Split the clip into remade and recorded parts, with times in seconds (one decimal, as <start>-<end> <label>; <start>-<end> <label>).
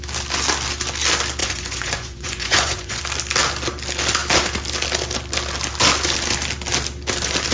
0.0-1.4 recorded; 1.4-3.0 remade; 3.0-7.5 recorded